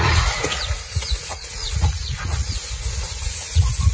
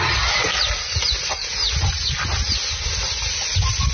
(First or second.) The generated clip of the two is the first